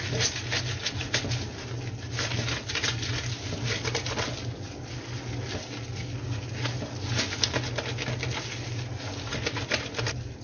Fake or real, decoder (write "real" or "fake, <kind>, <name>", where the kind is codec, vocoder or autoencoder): real